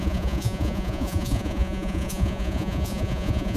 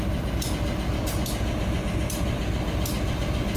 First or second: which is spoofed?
first